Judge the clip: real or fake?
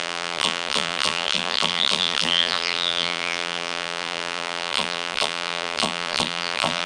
fake